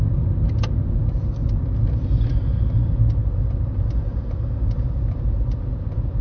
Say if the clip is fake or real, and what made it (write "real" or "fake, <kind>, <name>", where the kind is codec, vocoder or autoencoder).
real